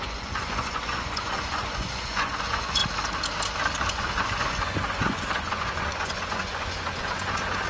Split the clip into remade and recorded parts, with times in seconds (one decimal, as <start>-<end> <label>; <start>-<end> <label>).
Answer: 0.0-2.8 remade; 2.8-3.9 recorded; 3.9-7.7 remade